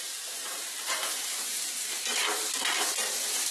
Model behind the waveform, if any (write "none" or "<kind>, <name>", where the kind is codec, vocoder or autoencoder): vocoder, BigVGAN v2